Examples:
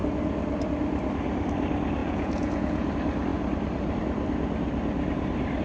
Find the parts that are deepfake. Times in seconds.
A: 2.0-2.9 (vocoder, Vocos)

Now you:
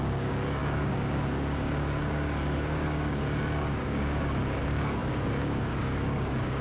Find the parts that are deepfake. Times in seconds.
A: 0.0-6.6 (codec, DAC)

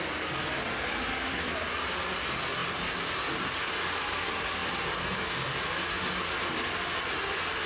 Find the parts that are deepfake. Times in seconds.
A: none